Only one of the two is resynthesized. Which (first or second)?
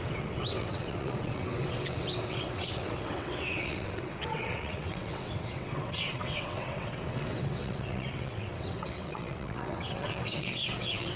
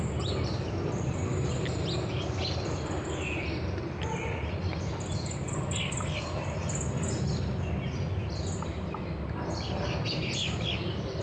first